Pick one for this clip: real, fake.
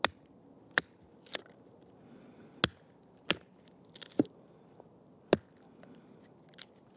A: real